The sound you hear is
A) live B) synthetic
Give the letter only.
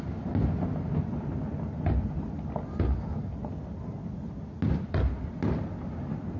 A